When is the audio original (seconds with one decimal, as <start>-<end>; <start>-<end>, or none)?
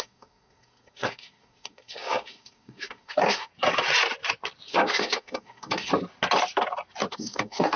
3.5-4.7; 5.9-7.1